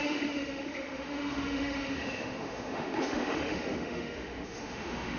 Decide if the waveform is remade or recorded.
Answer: remade